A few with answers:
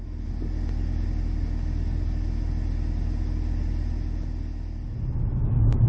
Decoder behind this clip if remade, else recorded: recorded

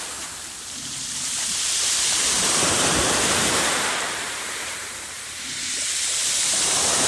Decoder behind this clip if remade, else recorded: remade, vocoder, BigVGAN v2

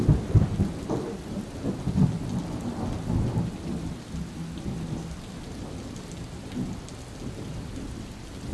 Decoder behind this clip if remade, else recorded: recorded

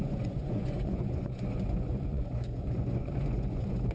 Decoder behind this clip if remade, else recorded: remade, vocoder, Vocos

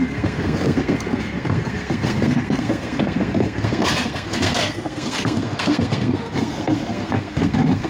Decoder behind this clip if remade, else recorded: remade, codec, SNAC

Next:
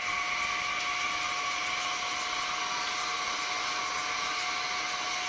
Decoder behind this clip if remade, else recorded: recorded